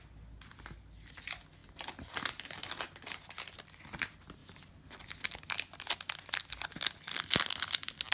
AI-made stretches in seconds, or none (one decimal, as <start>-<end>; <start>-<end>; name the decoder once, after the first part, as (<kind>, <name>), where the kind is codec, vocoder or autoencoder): none